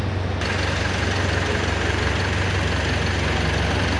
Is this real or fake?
real